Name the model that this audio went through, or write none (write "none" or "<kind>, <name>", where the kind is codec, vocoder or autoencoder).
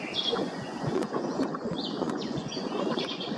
vocoder, Vocos